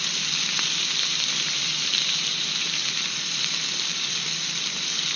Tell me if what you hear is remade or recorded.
recorded